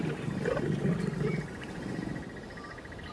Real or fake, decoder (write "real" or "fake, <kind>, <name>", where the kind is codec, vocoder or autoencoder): real